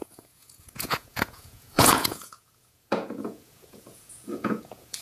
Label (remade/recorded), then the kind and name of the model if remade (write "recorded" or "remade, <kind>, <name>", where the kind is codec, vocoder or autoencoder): remade, vocoder, Vocos